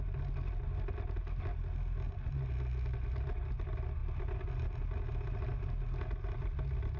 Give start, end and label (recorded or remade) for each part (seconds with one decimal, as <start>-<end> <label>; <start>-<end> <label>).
0.0-7.0 recorded